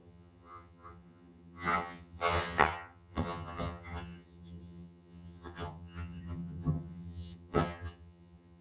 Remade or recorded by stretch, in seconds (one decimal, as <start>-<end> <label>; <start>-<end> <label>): 0.0-8.6 remade